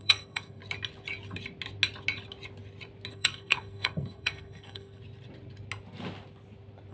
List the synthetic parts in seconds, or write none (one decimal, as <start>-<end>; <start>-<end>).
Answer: 0.0-0.6; 3.1-5.0